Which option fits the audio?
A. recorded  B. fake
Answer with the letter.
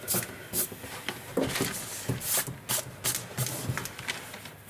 A